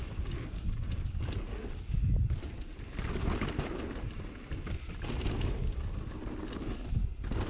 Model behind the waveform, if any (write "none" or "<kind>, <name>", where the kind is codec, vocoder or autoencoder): none